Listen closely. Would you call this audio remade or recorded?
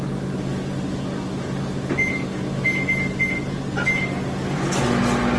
recorded